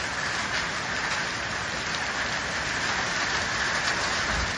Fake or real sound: real